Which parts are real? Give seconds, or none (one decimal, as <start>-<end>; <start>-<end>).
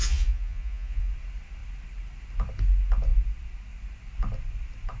1.1-5.0